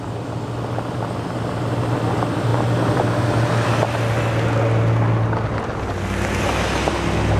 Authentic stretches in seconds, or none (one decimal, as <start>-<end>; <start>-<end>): 0.0-7.4